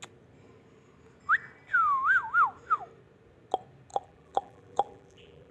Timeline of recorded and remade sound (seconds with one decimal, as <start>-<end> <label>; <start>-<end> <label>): 0.0-3.9 recorded; 3.9-5.5 remade

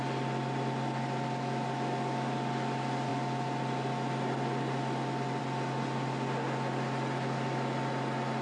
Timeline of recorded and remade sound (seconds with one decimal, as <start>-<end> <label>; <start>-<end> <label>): 0.0-8.4 recorded

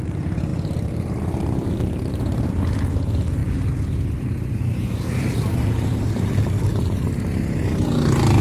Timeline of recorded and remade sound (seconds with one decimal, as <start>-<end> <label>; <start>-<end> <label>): 0.0-3.4 remade; 3.4-4.5 recorded; 4.5-8.4 remade

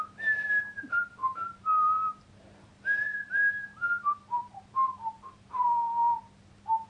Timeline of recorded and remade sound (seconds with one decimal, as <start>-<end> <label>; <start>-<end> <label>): 0.0-1.2 recorded; 1.2-2.7 remade; 2.7-3.1 recorded; 3.1-6.5 remade; 6.5-6.9 recorded